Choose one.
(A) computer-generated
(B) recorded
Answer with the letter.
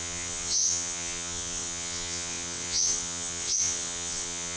A